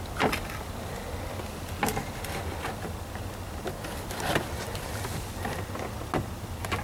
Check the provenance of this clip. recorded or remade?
recorded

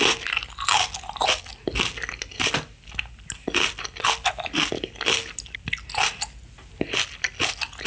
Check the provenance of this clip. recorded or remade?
recorded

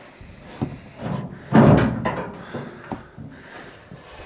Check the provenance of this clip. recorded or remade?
recorded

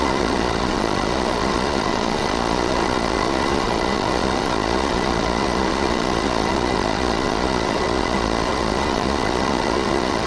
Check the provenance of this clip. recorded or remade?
remade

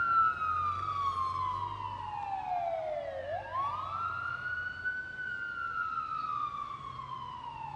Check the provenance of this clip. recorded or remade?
recorded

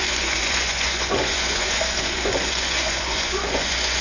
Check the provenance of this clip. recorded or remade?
remade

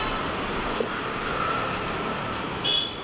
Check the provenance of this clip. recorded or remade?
recorded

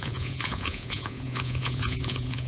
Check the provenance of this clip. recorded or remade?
remade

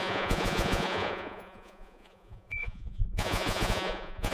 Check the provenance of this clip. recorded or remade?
remade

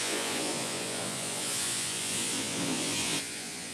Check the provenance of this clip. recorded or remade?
remade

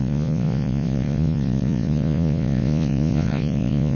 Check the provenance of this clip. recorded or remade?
remade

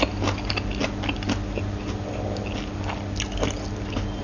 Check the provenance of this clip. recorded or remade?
recorded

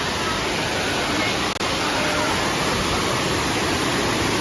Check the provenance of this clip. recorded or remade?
recorded